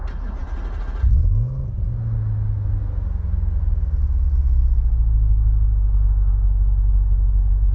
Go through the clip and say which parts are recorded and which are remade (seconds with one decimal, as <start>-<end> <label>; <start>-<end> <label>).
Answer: 0.0-7.7 recorded